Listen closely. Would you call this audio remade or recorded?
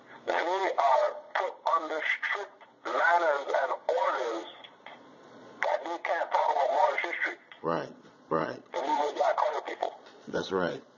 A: remade